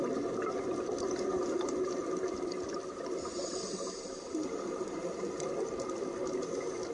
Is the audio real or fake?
real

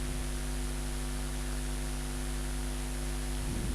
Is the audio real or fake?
real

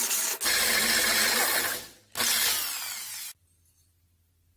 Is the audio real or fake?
real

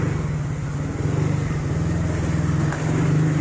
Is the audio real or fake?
real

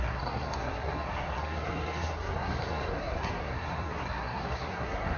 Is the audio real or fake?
fake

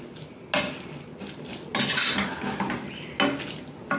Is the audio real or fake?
real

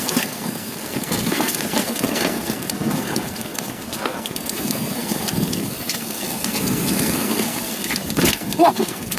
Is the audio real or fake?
fake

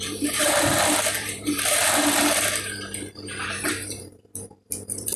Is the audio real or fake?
fake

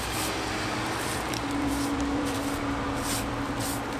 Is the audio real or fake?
fake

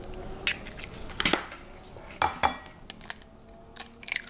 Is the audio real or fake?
real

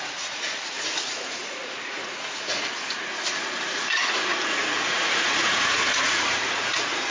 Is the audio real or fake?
fake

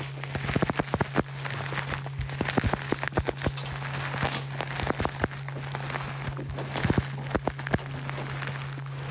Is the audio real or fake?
real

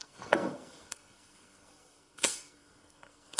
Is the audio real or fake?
fake